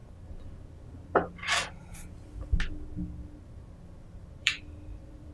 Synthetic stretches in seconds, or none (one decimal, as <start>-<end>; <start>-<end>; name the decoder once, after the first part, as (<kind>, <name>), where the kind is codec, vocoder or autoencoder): 4.4-5.3 (vocoder, BigVGAN v2)